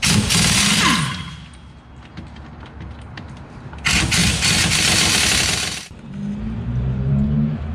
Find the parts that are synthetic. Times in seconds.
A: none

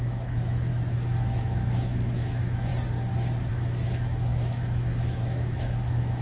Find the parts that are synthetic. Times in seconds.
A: 0.0-0.7 (autoencoder, DAC-VAE); 1.4-2.7; 3.5-6.2

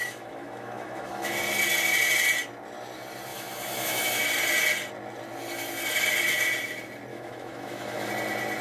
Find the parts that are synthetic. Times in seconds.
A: 0.0-1.4 (autoencoder, DAC-VAE); 3.3-4.2; 7.1-8.1